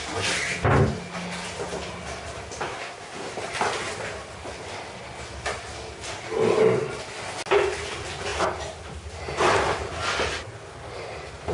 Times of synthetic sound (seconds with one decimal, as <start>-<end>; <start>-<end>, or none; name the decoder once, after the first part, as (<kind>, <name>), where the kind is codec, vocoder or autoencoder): 2.7-3.3 (codec, SNAC)

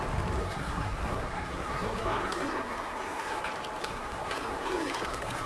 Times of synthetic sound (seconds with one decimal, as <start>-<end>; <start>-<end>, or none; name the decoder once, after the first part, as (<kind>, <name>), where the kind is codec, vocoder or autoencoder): 0.4-3.4 (codec, SNAC); 3.8-5.5